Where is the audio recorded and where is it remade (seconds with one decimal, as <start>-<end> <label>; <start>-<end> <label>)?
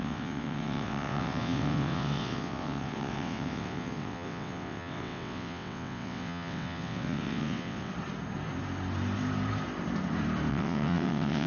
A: 0.0-7.9 remade; 7.9-10.5 recorded; 10.5-11.5 remade